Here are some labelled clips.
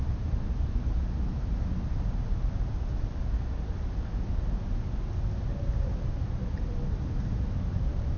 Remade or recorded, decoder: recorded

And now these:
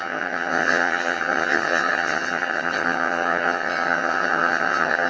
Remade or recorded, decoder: remade, vocoder, HiFi-GAN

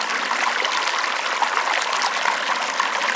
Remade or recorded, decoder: recorded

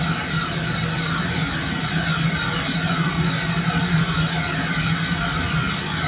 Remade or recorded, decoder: recorded